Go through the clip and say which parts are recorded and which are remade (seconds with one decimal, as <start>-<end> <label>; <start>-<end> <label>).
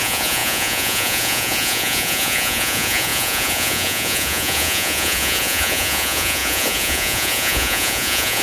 0.0-8.4 remade